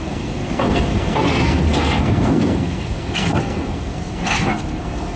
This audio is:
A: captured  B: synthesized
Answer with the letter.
B